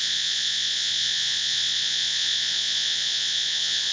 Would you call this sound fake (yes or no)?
yes